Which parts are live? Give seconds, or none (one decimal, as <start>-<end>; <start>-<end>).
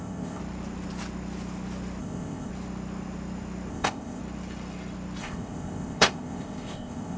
0.4-2.0; 2.5-3.7; 4.2-5.2